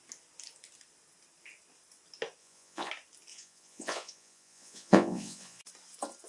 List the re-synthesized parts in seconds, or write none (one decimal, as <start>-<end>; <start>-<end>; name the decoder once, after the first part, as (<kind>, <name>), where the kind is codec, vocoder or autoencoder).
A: 2.4-2.9 (vocoder, Vocos); 3.3-5.6